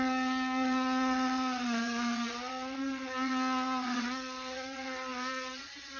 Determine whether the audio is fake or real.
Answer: fake